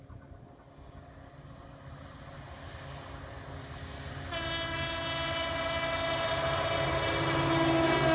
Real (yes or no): yes